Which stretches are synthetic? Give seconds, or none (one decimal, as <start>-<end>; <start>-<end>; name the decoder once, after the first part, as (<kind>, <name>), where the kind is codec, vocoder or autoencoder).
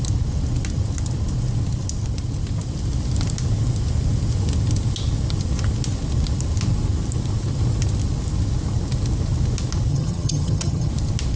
9.9-10.9 (vocoder, HiFi-GAN)